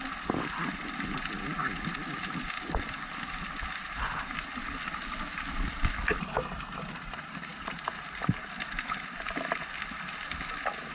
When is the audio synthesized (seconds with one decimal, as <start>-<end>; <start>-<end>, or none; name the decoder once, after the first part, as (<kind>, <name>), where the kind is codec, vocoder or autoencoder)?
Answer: none